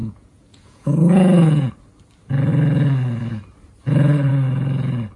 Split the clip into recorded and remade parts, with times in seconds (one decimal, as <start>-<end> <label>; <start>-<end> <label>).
0.0-1.7 remade; 1.7-5.2 recorded